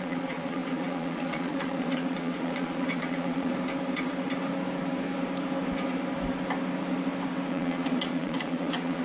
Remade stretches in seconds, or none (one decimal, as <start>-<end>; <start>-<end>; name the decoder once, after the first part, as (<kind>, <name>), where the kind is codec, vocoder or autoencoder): 0.0-3.5 (vocoder, Vocos); 7.5-9.0